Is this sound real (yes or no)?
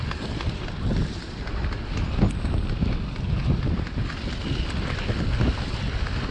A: yes